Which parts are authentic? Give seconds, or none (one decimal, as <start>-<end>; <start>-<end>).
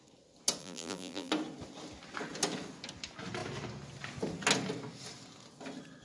0.0-0.6; 1.3-6.0